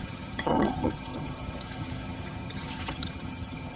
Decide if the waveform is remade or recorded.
remade